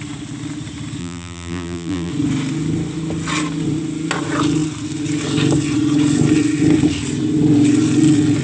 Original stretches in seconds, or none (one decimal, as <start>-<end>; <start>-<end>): 0.0-1.0; 2.1-8.4